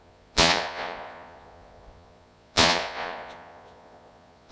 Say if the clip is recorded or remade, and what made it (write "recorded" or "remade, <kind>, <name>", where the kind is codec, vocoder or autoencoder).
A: remade, vocoder, Vocos